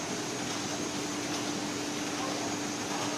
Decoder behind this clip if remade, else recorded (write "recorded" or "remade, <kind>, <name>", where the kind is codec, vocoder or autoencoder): recorded